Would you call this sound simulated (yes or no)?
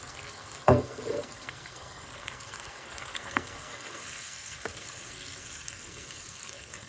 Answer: yes